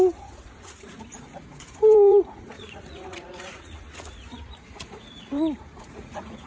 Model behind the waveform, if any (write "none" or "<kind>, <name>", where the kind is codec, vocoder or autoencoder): vocoder, Vocos